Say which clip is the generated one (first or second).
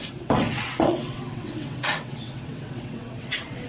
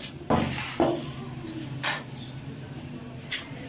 first